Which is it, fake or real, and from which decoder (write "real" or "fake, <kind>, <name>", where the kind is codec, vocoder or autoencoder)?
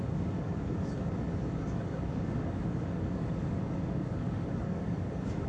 fake, codec, DAC